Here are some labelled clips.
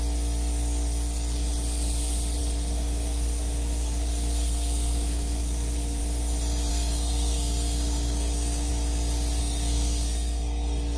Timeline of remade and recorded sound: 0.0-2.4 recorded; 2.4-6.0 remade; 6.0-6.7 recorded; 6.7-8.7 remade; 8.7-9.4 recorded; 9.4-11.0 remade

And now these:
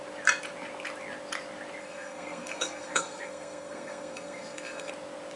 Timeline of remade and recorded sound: 0.0-1.8 recorded; 1.8-4.9 remade; 4.9-5.4 recorded

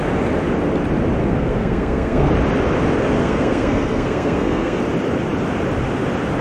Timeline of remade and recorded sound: 0.0-1.2 recorded; 1.2-2.3 remade; 2.3-3.2 recorded; 3.2-4.8 remade; 4.8-6.4 recorded

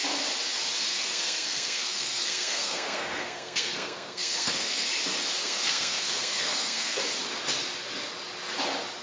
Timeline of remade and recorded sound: 0.0-0.9 recorded; 0.9-4.9 remade; 4.9-5.4 recorded; 5.4-7.0 remade; 7.0-9.0 recorded